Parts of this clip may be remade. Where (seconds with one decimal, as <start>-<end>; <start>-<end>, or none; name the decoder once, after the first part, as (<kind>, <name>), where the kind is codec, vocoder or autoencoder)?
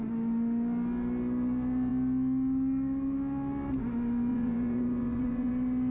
4.3-5.5 (vocoder, Vocos)